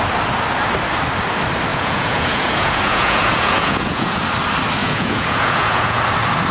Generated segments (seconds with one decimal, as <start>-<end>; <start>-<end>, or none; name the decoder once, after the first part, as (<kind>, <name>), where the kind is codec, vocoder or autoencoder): 1.7-4.2 (vocoder, Vocos); 4.8-6.0